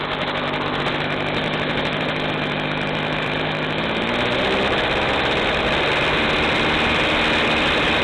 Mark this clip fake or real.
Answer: real